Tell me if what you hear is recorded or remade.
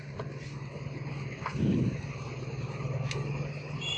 recorded